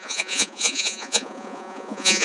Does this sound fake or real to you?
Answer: fake